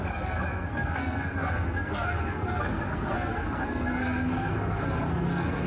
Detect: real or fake fake